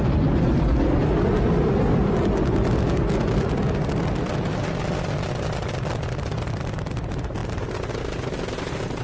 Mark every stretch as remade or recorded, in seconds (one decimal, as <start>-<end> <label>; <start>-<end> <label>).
0.0-9.0 recorded